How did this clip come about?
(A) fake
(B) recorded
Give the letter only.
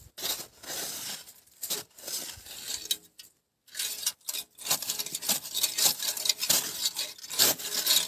B